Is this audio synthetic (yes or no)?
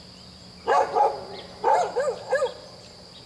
no